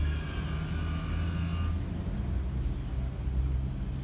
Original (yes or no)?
yes